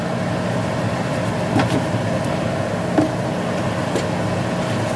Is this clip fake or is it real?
real